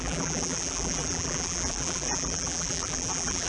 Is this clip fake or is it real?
fake